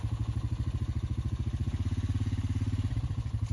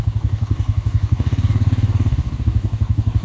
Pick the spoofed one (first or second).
second